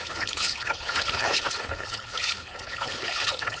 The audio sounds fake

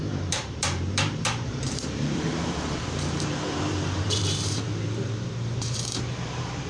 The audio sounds fake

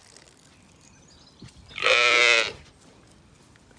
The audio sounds real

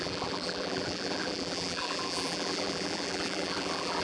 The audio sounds fake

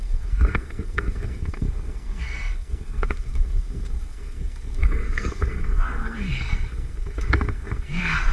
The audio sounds fake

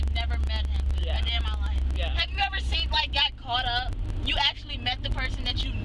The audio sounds real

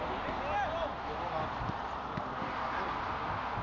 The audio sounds real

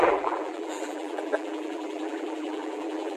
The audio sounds fake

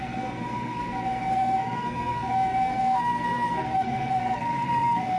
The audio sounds fake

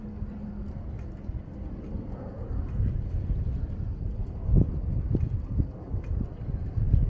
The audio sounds real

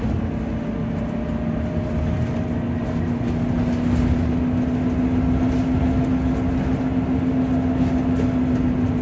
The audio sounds real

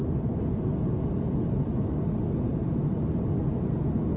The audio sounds real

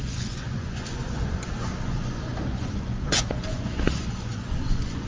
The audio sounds fake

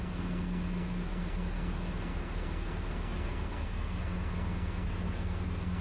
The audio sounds fake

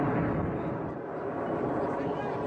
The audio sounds real